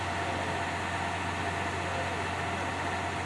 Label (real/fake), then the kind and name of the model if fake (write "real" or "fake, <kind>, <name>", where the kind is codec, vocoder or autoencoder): real